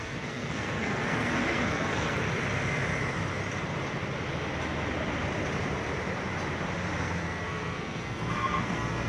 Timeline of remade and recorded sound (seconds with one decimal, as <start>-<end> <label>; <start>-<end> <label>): 0.0-2.2 remade; 2.2-7.0 recorded; 7.0-9.1 remade